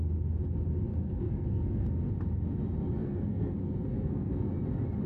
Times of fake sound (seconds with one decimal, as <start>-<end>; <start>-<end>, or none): 0.9-2.0; 3.0-4.5